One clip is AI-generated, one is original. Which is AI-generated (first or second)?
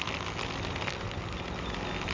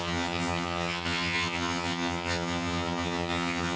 second